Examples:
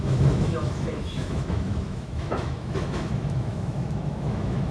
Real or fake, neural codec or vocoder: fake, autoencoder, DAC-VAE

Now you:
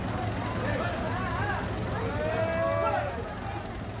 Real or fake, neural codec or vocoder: real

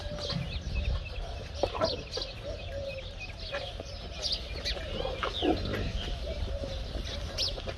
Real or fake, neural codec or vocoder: real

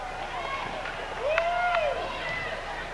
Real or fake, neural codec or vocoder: real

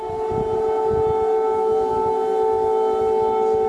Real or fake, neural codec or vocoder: real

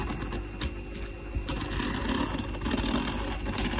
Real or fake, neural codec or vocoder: real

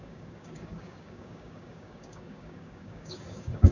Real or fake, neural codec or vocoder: fake, codec, DAC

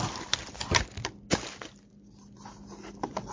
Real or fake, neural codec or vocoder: real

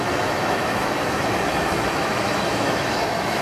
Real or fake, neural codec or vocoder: fake, autoencoder, DAC-VAE